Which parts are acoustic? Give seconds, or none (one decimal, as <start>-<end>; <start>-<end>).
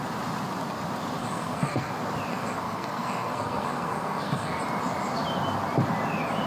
0.0-1.2; 1.9-2.3; 4.6-6.5